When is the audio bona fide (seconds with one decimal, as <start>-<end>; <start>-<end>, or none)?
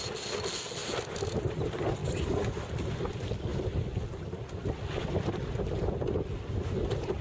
0.0-0.8; 1.5-2.0; 2.7-3.5; 4.3-7.2